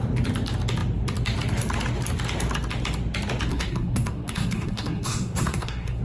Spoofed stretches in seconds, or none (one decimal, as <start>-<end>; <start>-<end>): 3.5-6.0